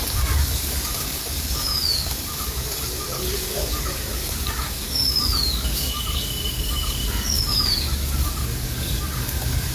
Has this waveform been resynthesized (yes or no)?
yes